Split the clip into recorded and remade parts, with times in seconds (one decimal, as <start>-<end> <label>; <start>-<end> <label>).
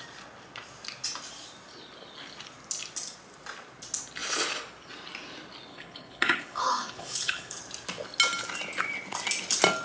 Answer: 0.0-5.7 recorded; 5.7-7.6 remade; 7.6-9.8 recorded